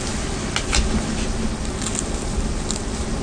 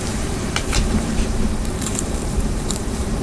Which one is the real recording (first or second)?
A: first